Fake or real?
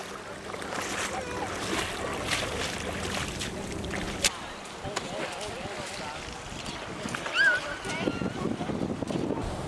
real